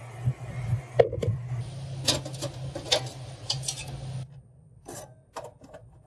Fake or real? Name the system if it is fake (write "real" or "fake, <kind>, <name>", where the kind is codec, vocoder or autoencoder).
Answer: real